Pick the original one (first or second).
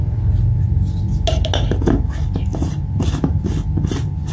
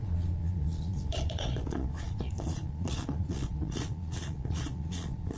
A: first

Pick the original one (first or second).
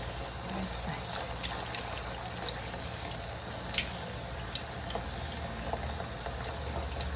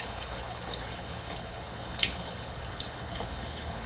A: first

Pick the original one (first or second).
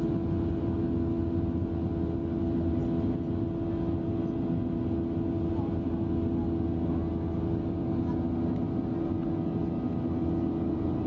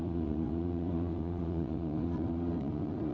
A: first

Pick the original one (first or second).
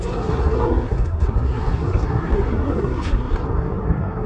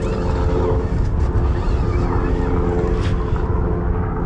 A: second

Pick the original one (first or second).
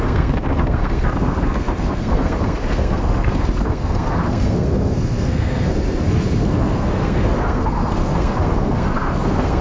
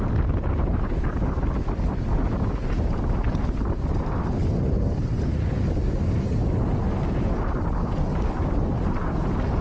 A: second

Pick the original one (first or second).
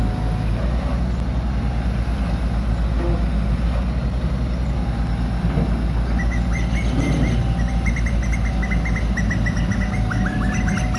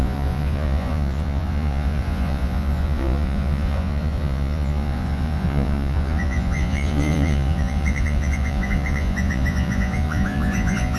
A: first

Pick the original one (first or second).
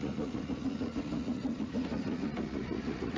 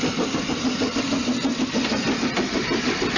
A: second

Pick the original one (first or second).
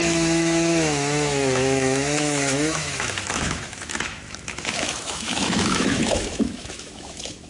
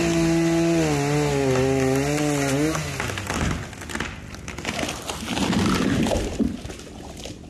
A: second